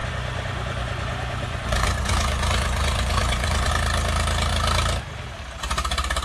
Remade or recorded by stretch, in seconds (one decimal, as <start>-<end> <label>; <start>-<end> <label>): 0.0-3.7 remade; 3.7-6.2 recorded